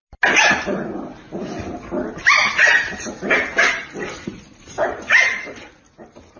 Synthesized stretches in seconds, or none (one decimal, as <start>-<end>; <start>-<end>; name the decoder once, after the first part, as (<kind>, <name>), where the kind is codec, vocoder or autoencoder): none